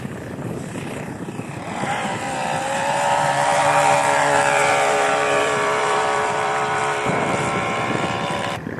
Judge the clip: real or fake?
fake